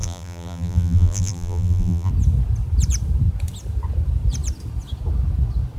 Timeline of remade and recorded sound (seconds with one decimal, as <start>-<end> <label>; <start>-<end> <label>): 0.0-2.1 remade; 2.1-5.8 recorded